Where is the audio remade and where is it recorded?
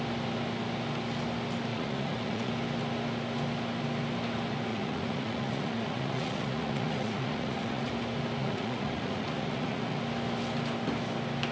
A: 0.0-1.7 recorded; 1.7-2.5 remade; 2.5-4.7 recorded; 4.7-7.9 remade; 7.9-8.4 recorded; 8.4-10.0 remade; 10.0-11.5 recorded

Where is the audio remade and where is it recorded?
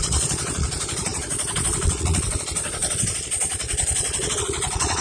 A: 0.0-5.0 remade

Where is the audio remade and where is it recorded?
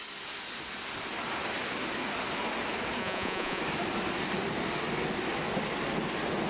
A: 0.0-3.0 recorded; 3.0-3.6 remade; 3.6-6.5 recorded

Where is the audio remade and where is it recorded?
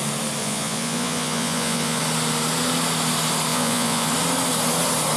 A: 0.0-0.4 recorded; 0.4-2.0 remade; 2.0-3.5 recorded; 3.5-4.1 remade; 4.1-5.2 recorded